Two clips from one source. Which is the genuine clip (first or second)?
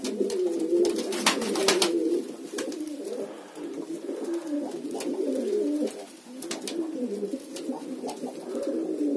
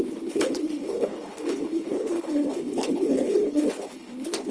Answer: first